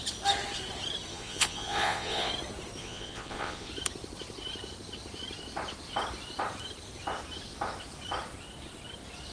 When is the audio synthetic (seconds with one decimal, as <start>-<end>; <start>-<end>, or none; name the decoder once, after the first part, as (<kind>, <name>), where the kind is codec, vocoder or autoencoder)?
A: 1.1-2.3 (vocoder, Vocos); 2.8-3.7